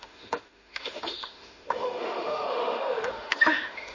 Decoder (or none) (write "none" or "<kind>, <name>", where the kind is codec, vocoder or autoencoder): autoencoder, DAC-VAE